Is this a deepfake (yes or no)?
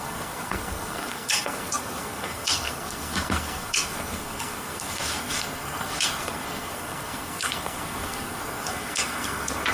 yes